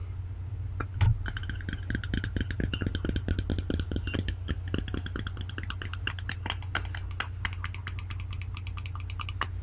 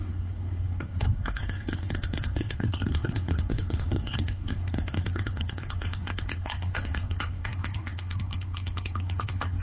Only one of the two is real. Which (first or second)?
first